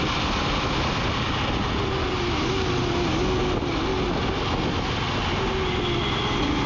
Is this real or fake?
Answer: real